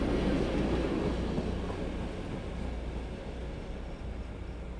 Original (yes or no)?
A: yes